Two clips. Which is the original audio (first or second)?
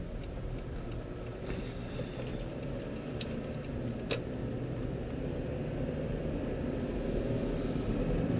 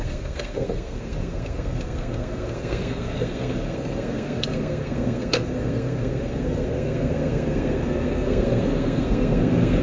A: first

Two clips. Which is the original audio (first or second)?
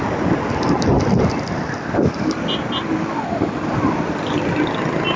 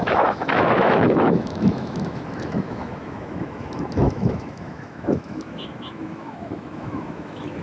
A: first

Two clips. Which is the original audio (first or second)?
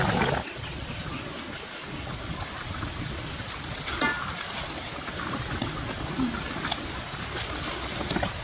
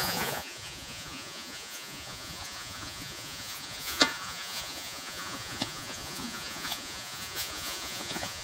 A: first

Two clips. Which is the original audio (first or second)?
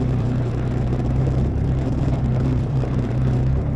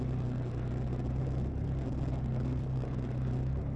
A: second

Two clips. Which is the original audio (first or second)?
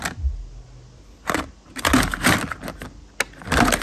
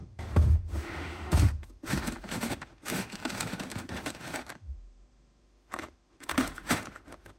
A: first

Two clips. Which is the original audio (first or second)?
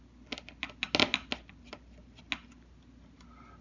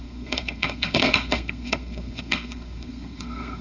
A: first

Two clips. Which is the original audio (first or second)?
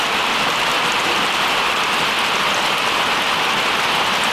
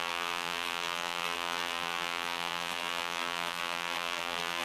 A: first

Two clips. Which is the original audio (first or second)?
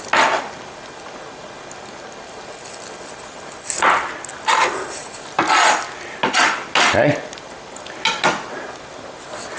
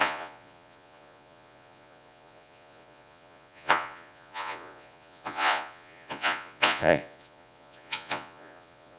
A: first